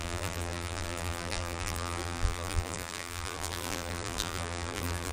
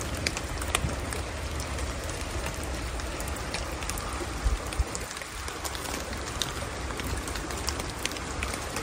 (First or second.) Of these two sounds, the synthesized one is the first